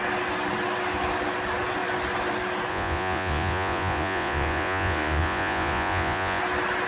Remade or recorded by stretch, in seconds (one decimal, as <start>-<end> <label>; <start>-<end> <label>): 0.0-2.7 recorded; 2.7-6.4 remade; 6.4-6.9 recorded